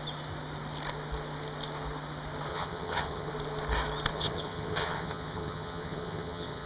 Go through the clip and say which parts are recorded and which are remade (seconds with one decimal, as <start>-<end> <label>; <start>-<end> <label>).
0.0-2.5 recorded; 2.5-3.3 remade; 3.3-4.1 recorded; 4.1-6.7 remade